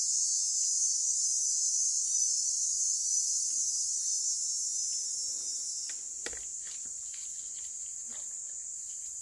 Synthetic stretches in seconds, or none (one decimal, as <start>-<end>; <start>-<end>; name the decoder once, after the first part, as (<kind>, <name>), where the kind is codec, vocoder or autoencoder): 0.5-4.2 (vocoder, Vocos); 8.6-9.2